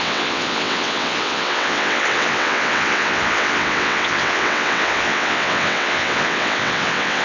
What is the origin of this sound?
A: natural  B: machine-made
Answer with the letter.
B